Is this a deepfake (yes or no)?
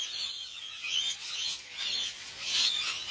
yes